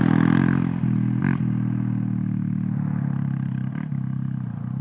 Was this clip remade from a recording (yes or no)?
no